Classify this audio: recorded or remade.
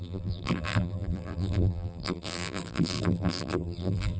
remade